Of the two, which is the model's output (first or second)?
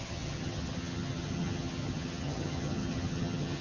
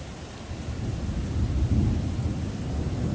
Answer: first